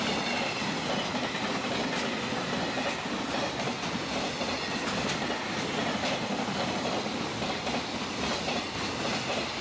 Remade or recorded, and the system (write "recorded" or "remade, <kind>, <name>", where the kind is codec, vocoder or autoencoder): recorded